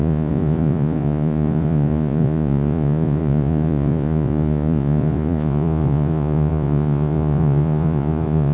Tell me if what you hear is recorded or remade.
remade